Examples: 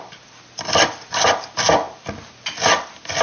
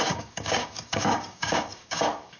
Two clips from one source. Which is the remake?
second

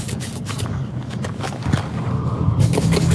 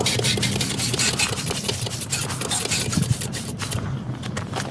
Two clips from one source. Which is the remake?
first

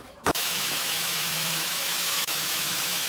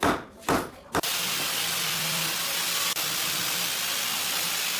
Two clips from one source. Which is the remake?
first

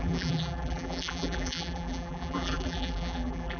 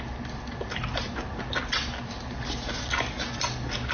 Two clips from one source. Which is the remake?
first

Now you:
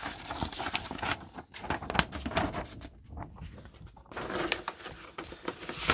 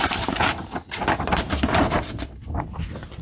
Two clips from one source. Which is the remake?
second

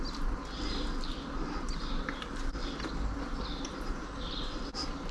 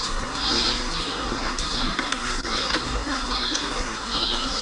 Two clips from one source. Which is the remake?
second